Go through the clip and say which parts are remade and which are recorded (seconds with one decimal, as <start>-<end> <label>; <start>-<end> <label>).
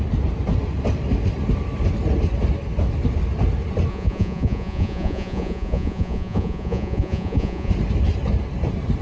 0.0-3.9 recorded; 3.9-7.7 remade; 7.7-9.0 recorded